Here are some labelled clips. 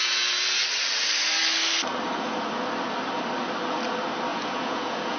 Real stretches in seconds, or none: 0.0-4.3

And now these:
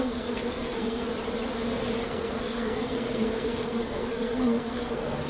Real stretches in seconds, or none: 1.1-2.0